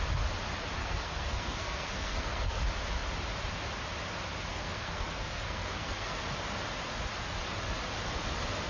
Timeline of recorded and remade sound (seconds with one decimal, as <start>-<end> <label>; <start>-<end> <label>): 0.0-0.8 recorded; 0.8-2.6 remade; 2.6-4.5 recorded; 4.5-6.2 remade; 6.2-8.7 recorded